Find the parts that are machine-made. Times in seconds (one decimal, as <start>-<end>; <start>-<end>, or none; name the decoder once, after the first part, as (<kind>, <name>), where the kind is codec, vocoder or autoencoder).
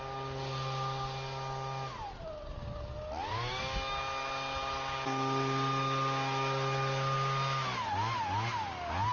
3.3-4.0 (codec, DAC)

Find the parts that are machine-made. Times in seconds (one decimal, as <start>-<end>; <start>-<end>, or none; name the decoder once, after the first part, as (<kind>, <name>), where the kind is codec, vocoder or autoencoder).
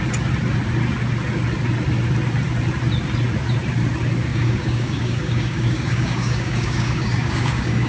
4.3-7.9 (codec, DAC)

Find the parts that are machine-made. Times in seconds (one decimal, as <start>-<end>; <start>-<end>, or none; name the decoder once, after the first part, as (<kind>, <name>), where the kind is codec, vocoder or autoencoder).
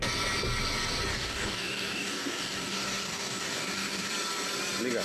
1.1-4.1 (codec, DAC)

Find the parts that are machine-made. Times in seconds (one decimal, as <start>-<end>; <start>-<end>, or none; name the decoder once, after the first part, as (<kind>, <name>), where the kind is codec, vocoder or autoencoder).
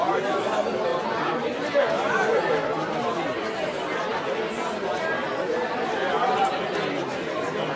none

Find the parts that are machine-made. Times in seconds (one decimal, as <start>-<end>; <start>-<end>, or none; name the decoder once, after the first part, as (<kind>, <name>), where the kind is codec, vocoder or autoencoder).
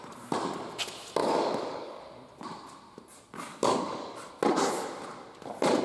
1.2-2.0 (codec, DAC); 3.5-4.3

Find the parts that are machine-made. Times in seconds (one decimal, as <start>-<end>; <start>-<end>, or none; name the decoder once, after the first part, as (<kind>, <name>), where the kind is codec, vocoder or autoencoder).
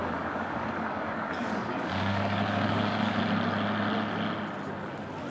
0.0-3.2 (codec, DAC)